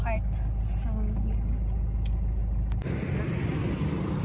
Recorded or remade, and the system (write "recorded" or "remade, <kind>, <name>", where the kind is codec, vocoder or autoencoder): recorded